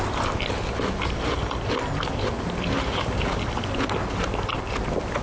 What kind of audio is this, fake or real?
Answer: real